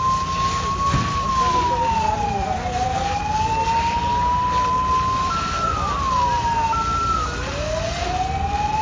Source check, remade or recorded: recorded